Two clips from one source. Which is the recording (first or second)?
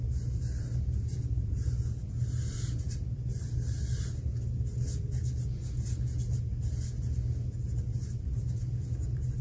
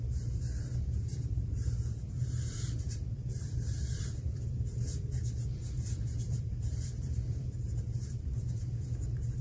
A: first